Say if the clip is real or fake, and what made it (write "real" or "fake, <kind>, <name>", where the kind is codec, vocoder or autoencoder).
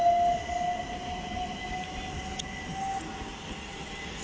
real